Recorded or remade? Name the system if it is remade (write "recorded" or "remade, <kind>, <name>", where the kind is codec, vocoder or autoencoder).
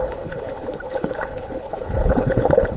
remade, codec, HILCodec